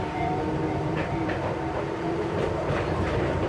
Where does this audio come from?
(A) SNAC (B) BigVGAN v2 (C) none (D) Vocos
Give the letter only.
B